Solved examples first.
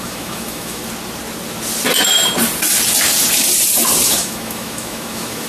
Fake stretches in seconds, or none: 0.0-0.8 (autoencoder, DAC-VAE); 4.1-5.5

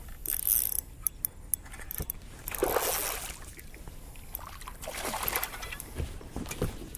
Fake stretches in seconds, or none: none

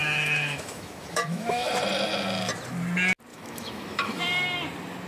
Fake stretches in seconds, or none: 0.0-1.7 (autoencoder, DAC-VAE); 3.3-4.2

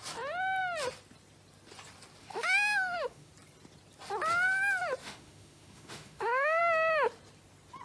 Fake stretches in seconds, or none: 2.2-3.3 (autoencoder, DAC-VAE); 5.0-6.6

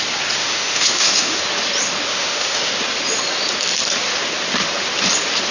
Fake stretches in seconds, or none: 0.4-1.4 (autoencoder, DAC-VAE); 2.1-2.7